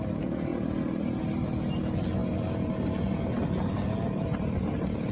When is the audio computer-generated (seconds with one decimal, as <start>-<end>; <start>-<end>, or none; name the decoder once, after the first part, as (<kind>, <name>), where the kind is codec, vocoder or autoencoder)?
none